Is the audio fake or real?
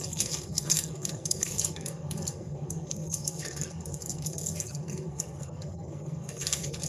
fake